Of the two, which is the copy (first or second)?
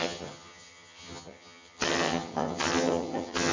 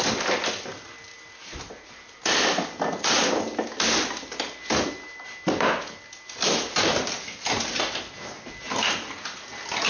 first